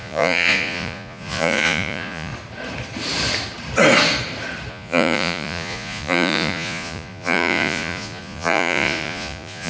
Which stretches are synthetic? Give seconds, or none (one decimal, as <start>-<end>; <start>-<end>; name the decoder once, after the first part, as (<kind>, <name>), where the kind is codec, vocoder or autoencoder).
0.0-2.3 (vocoder, Vocos); 4.7-9.7